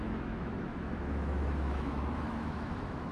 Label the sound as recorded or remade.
remade